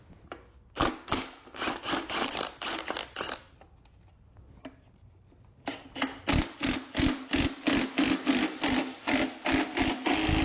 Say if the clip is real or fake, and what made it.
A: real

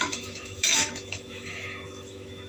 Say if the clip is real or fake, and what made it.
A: fake, autoencoder, DAC-VAE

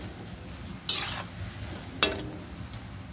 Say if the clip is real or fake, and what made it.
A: real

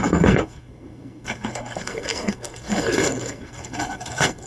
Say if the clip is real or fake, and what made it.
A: fake, codec, SNAC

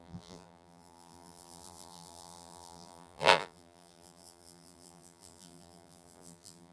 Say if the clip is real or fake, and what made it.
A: fake, vocoder, BigVGAN v2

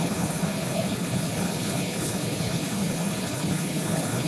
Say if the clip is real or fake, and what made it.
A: fake, codec, HILCodec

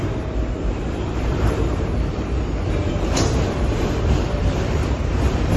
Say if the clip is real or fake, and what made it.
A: fake, vocoder, BigVGAN v2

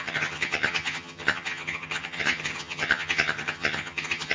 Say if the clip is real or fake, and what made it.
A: fake, vocoder, HiFi-GAN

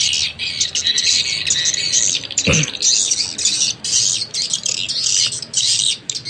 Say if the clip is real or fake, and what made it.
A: real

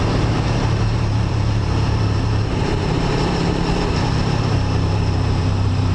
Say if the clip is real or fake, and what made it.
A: fake, vocoder, BigVGAN v2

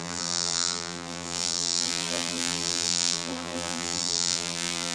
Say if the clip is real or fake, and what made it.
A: fake, vocoder, BigVGAN v2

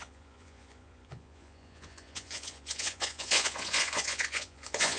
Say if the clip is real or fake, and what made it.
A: fake, vocoder, Vocos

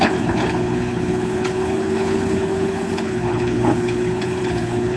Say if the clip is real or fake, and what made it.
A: fake, codec, HILCodec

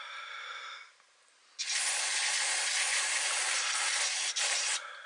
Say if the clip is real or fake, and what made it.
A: real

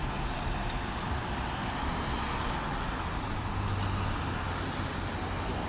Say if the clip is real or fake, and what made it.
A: real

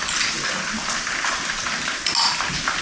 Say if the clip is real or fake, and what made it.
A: real